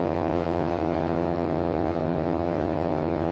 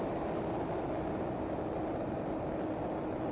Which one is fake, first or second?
first